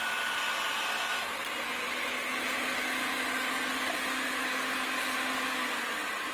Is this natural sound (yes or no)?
yes